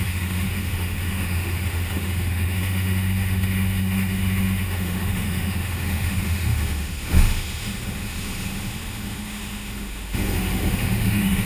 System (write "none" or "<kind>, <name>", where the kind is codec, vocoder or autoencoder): autoencoder, DAC-VAE